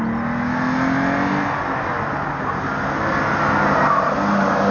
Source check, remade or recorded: recorded